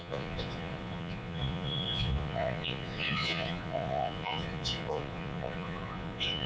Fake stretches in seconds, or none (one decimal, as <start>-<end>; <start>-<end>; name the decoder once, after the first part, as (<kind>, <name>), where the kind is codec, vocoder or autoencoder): 0.0-6.5 (vocoder, Vocos)